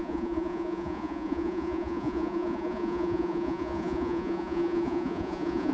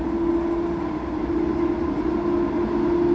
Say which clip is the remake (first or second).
first